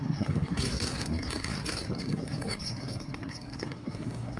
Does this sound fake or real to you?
fake